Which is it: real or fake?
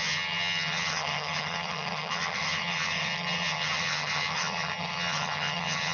fake